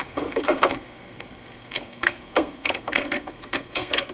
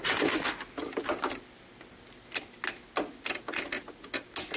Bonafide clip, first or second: second